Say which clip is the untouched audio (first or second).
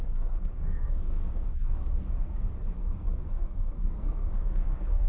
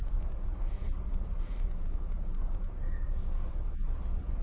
second